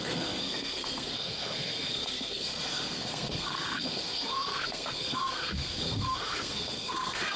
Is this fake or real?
fake